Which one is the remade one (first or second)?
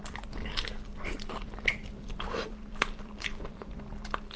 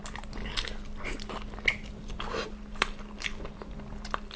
first